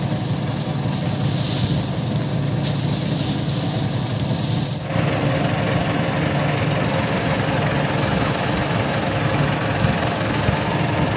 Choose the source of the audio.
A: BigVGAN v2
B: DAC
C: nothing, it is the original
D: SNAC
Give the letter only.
C